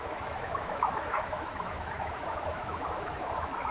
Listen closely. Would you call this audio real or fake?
fake